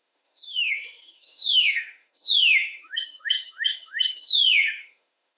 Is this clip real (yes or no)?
no